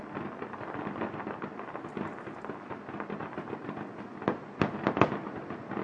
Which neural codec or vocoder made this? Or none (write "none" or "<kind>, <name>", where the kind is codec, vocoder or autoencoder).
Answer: none